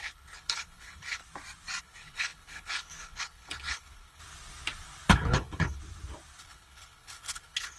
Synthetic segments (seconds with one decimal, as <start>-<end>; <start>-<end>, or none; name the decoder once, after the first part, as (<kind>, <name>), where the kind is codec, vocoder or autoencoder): 0.0-1.2 (codec, HILCodec); 1.8-4.2; 5.1-5.8; 6.4-7.8